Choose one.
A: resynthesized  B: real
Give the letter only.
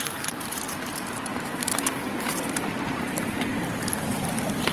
A